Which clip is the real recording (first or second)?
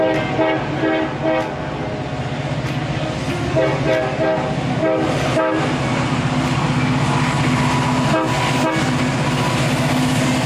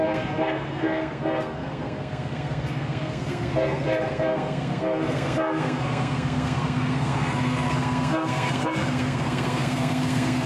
first